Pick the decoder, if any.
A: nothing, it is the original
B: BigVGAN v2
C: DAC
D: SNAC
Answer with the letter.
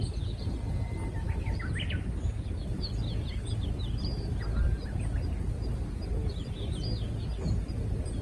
A